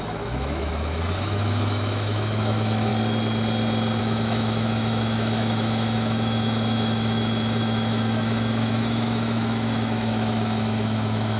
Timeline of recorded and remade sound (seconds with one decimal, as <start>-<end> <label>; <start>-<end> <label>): 0.0-2.9 remade; 2.9-4.0 recorded; 4.0-11.4 remade